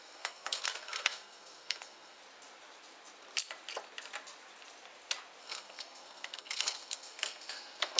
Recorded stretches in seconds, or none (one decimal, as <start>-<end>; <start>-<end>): 2.2-5.4